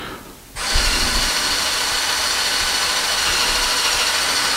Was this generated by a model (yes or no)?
no